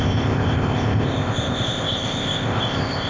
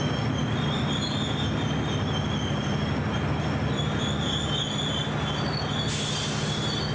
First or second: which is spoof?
first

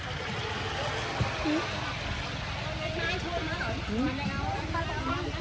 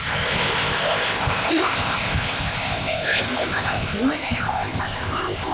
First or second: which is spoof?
second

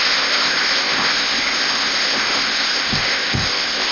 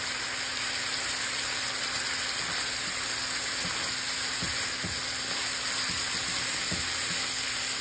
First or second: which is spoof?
first